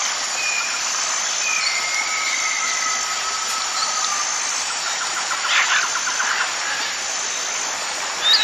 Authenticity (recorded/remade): recorded